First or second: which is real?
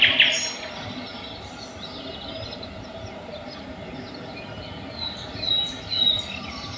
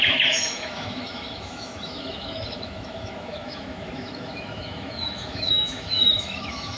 first